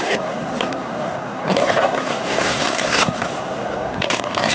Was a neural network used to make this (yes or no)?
yes